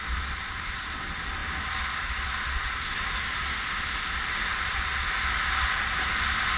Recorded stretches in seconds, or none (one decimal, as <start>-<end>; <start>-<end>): 0.0-6.6